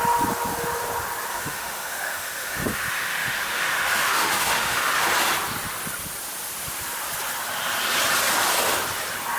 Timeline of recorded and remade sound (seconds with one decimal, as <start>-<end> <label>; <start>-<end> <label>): 0.0-1.3 recorded; 1.3-5.1 remade; 5.1-9.4 recorded